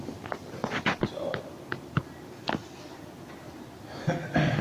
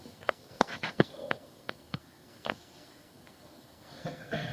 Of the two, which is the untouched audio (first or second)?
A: first